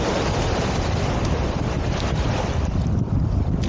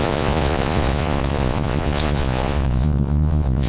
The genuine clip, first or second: first